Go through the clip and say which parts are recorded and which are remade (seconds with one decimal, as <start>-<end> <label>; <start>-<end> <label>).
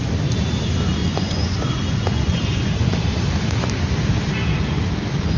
0.0-1.0 recorded; 1.0-2.7 remade; 2.7-5.4 recorded